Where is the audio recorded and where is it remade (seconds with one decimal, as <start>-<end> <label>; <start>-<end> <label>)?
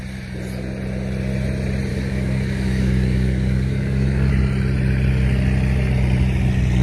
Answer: 0.0-1.9 recorded; 1.9-4.3 remade; 4.3-6.8 recorded